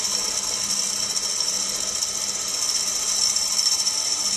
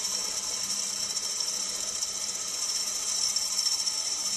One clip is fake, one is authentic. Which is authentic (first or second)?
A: first